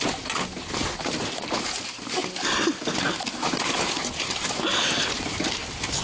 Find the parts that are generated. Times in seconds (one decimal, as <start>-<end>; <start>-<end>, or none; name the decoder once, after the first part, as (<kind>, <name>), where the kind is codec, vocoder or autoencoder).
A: none